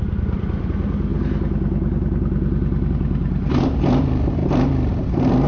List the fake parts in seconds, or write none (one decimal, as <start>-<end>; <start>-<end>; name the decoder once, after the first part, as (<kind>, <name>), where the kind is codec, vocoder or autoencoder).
0.0-1.1 (vocoder, BigVGAN v2); 2.9-4.4; 4.9-5.5